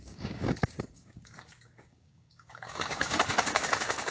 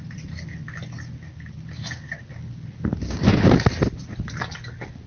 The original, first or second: second